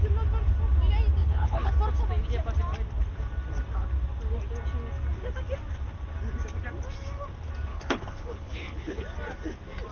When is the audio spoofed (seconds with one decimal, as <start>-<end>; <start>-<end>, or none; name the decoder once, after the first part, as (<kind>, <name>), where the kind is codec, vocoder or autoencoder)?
1.2-1.7 (codec, HILCodec); 7.7-9.0